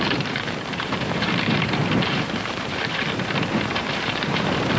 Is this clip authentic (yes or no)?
no